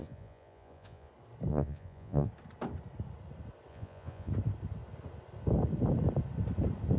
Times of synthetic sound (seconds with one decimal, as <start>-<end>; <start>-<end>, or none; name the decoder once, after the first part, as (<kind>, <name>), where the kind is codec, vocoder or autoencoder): 0.0-1.1 (vocoder, Vocos); 1.5-2.3; 3.7-4.3